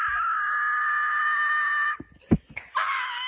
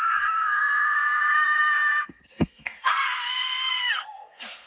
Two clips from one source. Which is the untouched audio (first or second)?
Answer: first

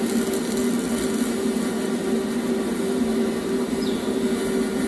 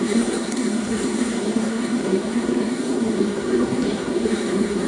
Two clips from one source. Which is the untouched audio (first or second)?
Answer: first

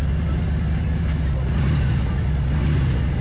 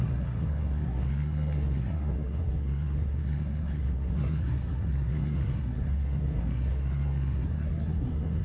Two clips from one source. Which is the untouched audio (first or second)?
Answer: first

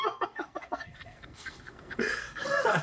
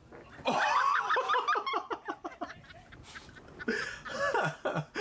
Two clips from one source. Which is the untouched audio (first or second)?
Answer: second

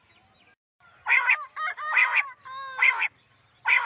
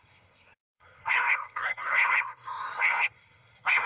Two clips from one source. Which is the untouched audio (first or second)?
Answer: first